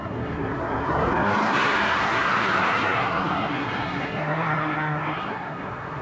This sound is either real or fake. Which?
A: fake